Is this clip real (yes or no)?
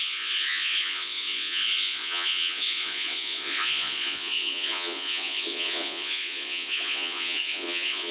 no